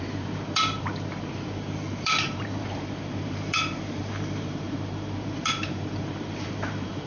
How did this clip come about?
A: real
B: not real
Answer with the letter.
B